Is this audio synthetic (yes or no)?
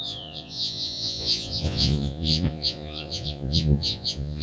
yes